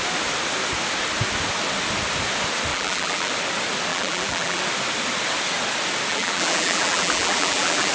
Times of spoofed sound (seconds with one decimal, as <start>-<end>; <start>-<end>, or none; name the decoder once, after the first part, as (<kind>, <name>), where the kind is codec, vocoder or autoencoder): 2.7-3.3 (vocoder, BigVGAN v2); 3.9-4.6; 6.1-7.9